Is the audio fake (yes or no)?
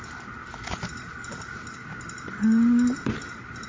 no